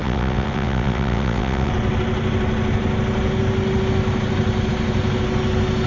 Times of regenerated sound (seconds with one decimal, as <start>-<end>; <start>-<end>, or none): 0.0-1.7

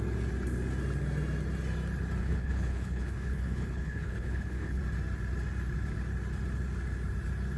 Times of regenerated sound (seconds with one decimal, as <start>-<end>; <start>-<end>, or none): 2.2-4.8

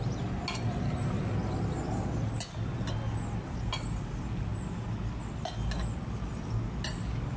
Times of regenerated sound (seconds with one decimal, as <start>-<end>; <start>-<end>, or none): none

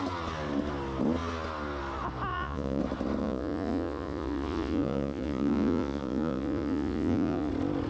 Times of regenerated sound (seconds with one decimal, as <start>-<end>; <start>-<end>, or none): 2.3-2.8; 3.2-7.5

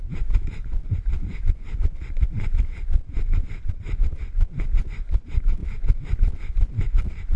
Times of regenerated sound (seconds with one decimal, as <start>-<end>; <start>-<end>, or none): 0.0-0.8; 1.8-3.0; 3.7-5.6

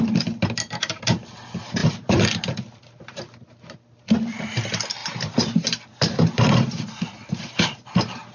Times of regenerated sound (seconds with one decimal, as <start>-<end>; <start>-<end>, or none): 1.8-3.2; 5.0-7.0